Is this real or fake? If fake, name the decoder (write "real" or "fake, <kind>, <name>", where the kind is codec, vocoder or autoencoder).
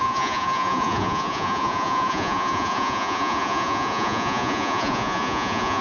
fake, vocoder, Vocos